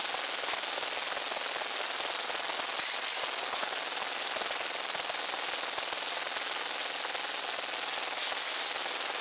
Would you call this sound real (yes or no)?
yes